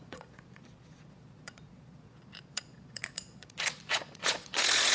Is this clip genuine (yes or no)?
no